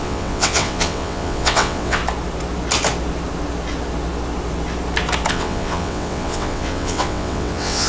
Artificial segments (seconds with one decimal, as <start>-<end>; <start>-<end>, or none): 0.0-2.0; 5.3-7.9